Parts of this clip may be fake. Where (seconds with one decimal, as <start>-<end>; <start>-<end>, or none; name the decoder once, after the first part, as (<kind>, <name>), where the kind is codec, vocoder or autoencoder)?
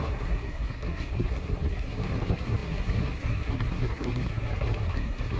0.0-5.4 (codec, SNAC)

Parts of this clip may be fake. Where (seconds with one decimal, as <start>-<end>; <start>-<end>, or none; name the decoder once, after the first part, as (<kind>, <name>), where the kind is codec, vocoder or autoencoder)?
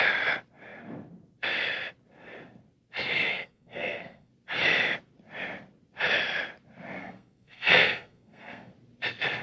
3.3-4.3 (codec, SNAC); 7.0-8.7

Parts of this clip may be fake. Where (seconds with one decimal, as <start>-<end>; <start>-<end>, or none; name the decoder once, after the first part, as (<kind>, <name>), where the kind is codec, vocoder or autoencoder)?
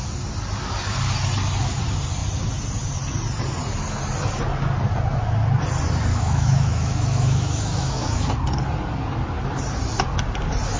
6.1-8.3 (autoencoder, DAC-VAE)